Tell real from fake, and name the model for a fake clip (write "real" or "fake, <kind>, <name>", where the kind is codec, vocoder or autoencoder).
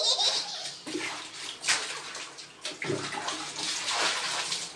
real